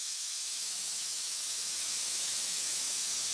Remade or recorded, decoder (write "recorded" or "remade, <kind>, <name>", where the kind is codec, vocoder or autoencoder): remade, autoencoder, DAC-VAE